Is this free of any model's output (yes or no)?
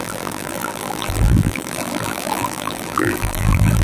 no